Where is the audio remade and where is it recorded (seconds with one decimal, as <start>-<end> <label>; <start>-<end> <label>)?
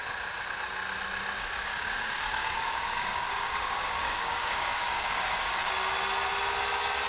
0.0-1.4 recorded; 1.4-5.7 remade; 5.7-7.1 recorded